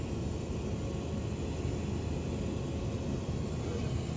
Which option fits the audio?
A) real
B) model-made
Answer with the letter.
A